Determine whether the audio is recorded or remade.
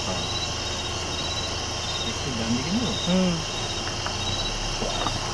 recorded